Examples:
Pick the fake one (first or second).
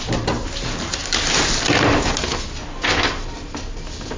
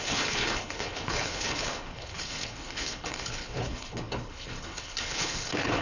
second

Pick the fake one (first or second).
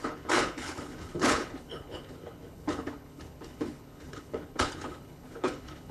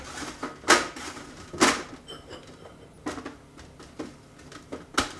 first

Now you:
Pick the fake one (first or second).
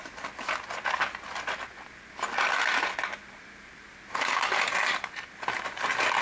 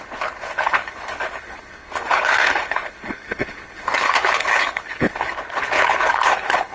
second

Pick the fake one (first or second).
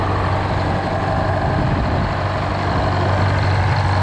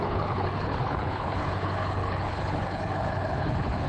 second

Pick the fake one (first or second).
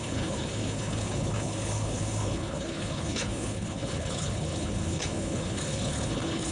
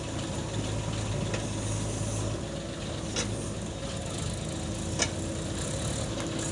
first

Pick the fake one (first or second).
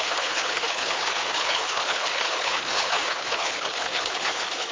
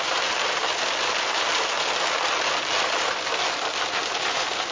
first